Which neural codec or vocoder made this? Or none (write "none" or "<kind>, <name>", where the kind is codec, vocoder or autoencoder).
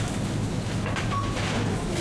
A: none